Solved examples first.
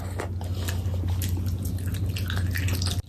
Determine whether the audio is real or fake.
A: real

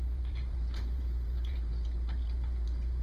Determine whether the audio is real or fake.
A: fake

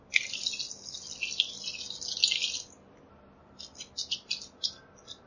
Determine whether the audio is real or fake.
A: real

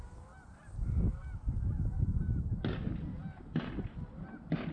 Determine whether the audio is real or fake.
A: real